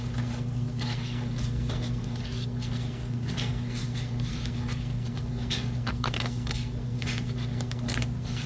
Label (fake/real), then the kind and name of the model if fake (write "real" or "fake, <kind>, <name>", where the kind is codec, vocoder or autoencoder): fake, codec, SNAC